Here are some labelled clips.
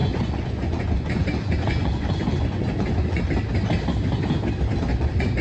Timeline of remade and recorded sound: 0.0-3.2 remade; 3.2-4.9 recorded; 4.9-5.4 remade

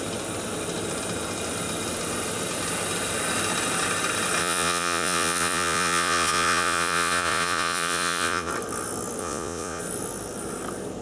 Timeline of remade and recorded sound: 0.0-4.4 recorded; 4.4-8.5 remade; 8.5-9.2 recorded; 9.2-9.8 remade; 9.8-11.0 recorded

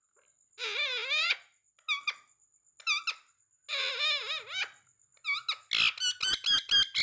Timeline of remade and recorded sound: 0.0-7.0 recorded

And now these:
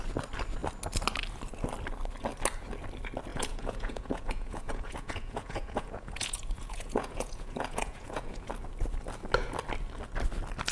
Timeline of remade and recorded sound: 0.0-3.3 recorded; 3.3-8.5 remade; 8.5-10.7 recorded

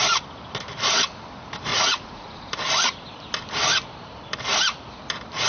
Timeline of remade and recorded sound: 0.0-1.7 recorded; 1.7-2.5 remade; 2.5-5.5 recorded

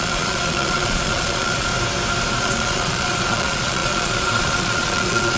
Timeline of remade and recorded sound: 0.0-1.7 remade; 1.7-2.4 recorded; 2.4-5.4 remade